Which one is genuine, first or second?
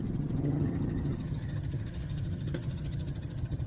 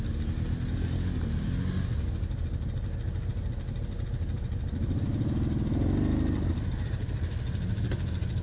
second